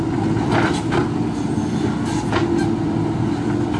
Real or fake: real